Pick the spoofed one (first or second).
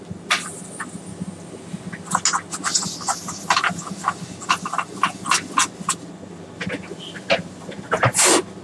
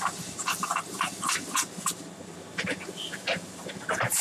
second